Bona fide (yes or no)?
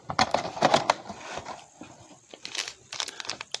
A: yes